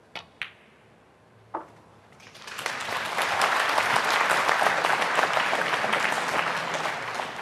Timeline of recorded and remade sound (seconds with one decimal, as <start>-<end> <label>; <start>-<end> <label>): 0.0-1.9 recorded; 1.9-2.6 remade; 2.6-7.4 recorded